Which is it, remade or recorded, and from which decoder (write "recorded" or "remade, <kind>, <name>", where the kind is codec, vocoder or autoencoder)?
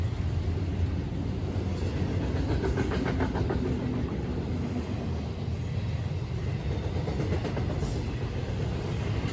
recorded